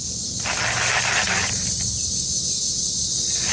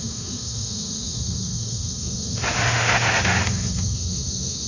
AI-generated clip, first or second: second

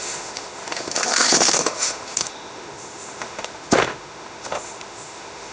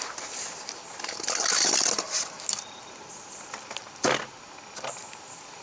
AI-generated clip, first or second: first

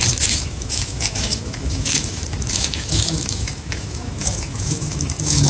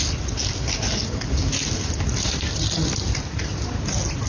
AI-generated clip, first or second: first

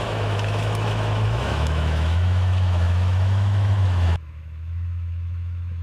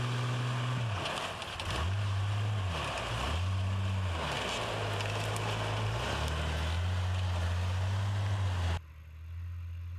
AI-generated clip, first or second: first